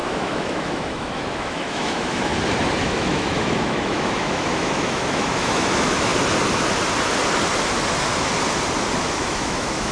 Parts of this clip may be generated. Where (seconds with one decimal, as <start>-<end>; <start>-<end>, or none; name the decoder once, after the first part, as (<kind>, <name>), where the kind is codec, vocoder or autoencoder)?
0.0-2.3 (autoencoder, DAC-VAE); 2.8-6.1; 9.0-9.9